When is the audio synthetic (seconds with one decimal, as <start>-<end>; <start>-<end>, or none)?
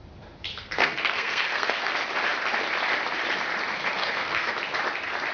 0.5-1.9; 4.0-4.5